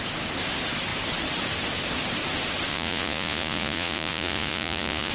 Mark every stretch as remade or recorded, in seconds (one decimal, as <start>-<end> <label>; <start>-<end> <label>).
0.0-2.7 recorded; 2.7-5.1 remade